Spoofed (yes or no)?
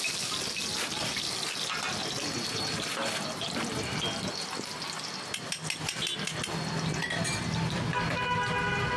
no